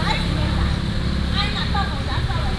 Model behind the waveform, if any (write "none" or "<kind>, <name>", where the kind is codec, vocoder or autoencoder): none